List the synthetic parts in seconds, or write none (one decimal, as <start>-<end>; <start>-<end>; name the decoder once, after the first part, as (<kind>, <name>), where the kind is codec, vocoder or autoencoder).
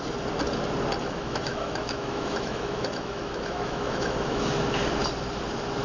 1.0-4.5 (autoencoder, DAC-VAE)